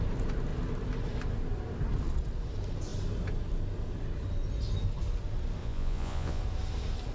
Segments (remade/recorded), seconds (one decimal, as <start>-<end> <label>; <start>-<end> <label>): 0.0-5.6 recorded; 5.6-6.4 remade; 6.4-7.1 recorded